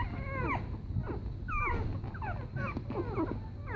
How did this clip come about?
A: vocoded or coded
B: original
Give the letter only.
B